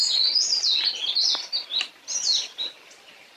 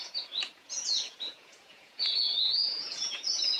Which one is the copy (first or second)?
second